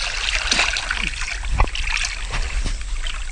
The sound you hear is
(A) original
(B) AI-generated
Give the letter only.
A